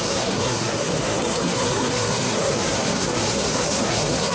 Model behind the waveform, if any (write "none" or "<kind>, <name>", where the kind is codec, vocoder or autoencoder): codec, SNAC